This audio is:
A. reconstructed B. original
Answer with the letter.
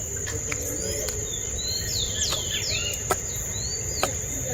B